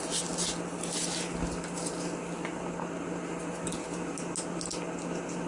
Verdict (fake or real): real